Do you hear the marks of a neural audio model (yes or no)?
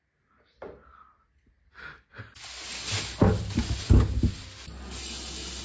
no